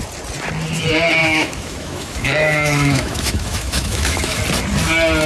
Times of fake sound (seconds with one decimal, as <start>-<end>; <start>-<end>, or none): 1.2-4.4